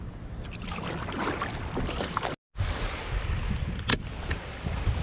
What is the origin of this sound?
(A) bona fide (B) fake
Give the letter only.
A